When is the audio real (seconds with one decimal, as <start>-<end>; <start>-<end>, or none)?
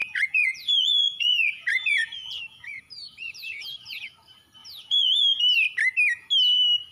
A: 4.1-4.6; 5.4-6.9